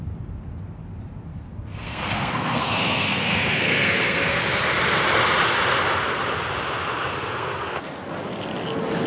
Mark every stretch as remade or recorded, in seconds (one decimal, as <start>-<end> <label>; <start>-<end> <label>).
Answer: 0.0-1.3 recorded; 1.3-4.4 remade; 4.4-7.1 recorded; 7.1-7.9 remade; 7.9-9.1 recorded

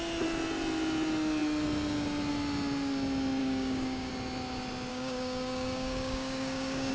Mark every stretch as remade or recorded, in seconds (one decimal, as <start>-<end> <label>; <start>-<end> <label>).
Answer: 0.0-3.4 recorded; 3.4-4.1 remade; 4.1-4.9 recorded; 4.9-6.9 remade

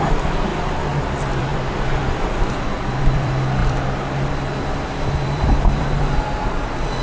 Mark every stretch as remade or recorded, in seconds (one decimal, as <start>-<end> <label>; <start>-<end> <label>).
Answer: 0.0-0.5 remade; 0.5-1.0 recorded; 1.0-7.0 remade

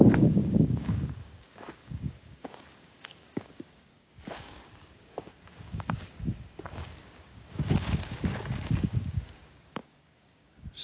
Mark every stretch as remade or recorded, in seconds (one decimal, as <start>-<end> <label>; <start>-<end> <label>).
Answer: 0.0-10.8 remade

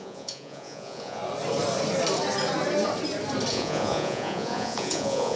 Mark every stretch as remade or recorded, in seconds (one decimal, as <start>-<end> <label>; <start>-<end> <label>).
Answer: 0.0-1.2 remade; 1.2-3.5 recorded; 3.5-5.4 remade

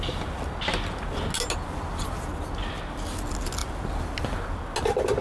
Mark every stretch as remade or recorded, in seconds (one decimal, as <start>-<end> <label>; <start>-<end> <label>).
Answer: 0.0-5.2 recorded

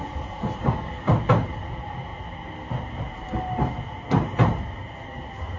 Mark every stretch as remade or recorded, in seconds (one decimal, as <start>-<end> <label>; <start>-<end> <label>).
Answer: 0.0-0.6 recorded; 0.6-1.1 remade; 1.1-5.6 recorded

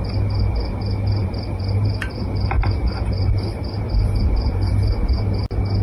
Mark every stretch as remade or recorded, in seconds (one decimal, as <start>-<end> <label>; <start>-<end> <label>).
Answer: 0.0-1.2 recorded; 1.2-4.7 remade; 4.7-5.8 recorded